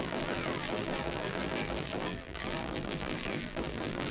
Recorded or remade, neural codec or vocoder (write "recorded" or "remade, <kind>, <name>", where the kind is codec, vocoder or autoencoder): remade, vocoder, BigVGAN v2